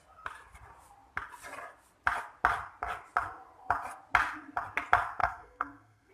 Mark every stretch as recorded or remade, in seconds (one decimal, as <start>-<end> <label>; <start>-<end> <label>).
0.0-5.2 recorded; 5.2-6.1 remade